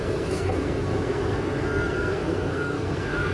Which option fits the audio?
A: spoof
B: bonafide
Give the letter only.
A